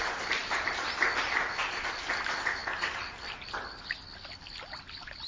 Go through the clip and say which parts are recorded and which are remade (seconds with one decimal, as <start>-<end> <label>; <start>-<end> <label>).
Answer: 0.0-5.3 recorded